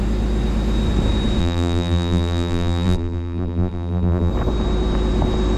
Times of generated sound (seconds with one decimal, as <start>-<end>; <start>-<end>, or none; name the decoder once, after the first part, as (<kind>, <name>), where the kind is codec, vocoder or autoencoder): 1.4-4.3 (vocoder, BigVGAN v2)